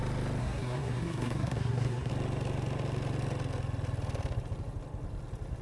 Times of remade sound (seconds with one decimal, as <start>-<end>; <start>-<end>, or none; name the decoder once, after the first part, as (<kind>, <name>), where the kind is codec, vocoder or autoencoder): 0.4-2.1 (codec, SNAC)